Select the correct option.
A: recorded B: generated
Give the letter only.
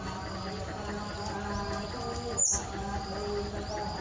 A